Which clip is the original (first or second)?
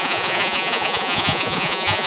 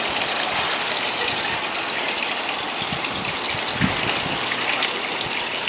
second